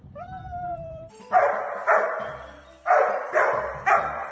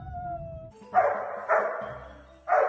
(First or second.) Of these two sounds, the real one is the second